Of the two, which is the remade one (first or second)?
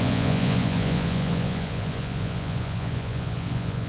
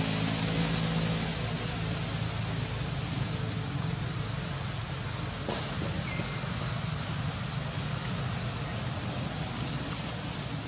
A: first